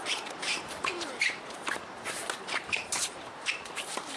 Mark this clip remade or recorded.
remade